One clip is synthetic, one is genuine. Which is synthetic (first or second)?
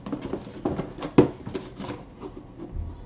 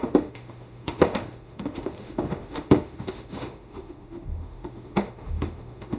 second